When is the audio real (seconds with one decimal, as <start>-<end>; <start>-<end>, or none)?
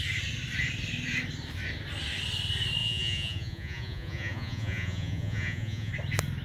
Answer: 0.0-2.8; 5.9-6.4